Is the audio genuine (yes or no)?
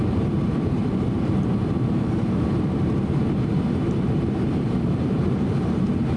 no